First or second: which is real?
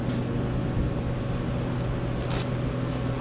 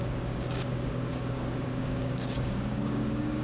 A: first